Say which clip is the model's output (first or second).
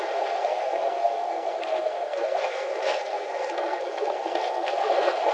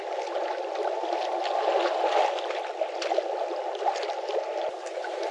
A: first